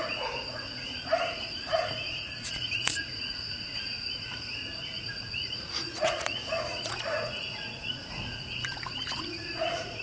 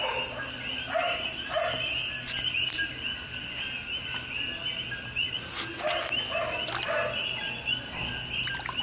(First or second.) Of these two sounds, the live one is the second